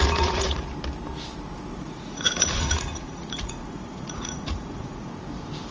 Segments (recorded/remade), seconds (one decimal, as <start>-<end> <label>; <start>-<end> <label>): 0.0-0.6 remade; 0.6-1.7 recorded; 1.7-5.1 remade; 5.1-5.7 recorded